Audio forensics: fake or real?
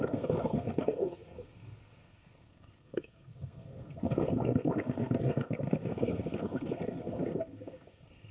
fake